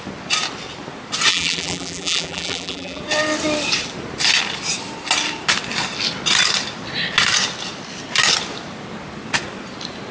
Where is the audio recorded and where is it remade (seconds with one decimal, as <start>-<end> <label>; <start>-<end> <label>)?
0.0-1.3 recorded; 1.3-3.0 remade; 3.0-10.1 recorded